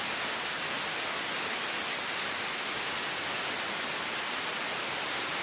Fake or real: real